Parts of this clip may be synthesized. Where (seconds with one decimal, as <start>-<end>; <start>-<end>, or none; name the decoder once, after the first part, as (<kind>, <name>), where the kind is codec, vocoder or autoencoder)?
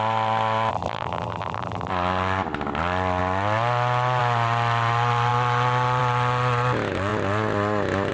0.7-1.9 (vocoder, BigVGAN v2)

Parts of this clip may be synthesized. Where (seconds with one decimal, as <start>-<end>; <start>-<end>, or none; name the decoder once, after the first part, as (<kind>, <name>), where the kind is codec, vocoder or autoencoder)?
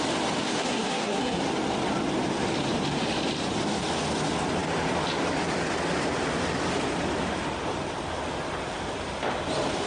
0.5-1.4 (codec, SNAC)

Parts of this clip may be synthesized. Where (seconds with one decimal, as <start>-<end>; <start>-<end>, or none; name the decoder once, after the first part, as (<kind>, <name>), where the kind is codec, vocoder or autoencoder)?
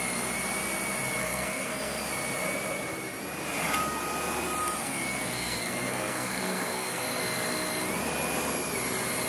1.2-2.0 (codec, SNAC); 4.8-7.2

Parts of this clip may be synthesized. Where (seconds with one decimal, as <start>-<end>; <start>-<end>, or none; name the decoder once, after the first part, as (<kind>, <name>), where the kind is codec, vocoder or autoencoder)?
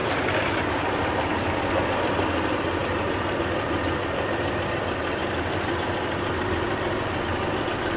0.0-1.0 (vocoder, BigVGAN v2)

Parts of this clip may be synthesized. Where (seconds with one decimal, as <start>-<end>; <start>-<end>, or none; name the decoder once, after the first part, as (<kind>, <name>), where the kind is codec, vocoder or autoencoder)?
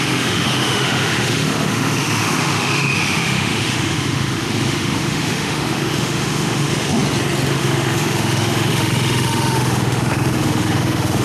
0.0-7.0 (autoencoder, DAC-VAE); 7.5-11.2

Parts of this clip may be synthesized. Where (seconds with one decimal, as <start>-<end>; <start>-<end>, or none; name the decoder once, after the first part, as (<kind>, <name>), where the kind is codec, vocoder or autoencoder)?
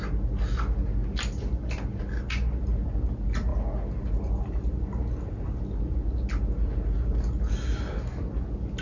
none